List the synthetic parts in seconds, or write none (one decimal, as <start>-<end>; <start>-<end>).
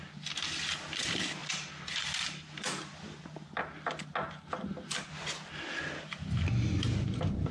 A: 1.4-3.6